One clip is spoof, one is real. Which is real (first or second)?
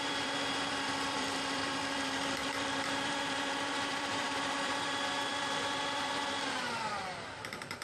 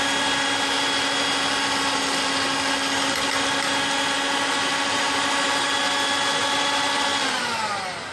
second